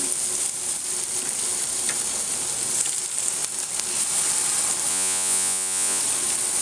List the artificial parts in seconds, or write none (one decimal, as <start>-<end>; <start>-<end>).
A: 4.9-6.0